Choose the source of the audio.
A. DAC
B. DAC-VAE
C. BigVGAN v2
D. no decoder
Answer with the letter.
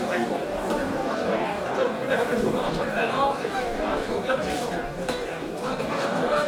A